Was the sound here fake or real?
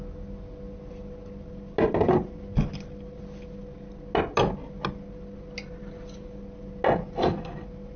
real